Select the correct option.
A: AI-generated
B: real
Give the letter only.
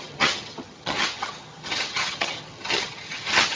A